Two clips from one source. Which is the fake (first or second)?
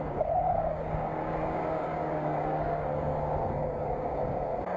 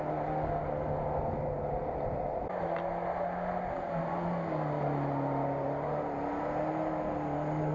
first